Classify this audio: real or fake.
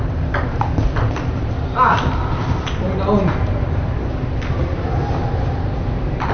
real